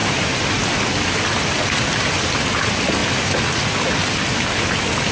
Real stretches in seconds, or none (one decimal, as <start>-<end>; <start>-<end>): 0.0-5.1